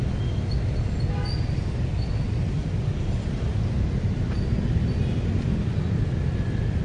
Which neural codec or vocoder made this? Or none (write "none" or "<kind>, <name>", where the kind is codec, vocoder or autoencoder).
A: none